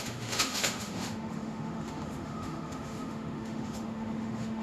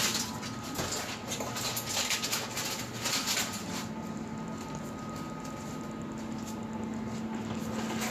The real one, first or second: second